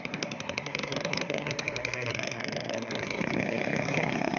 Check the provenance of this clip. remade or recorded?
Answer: remade